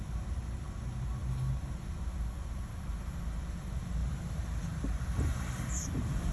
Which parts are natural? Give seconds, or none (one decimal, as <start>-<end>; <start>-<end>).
0.0-4.0; 5.7-6.3